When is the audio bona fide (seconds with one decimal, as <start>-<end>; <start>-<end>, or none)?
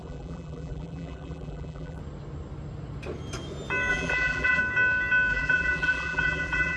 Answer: 2.0-3.9; 4.6-5.3